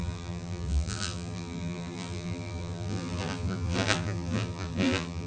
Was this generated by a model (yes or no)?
yes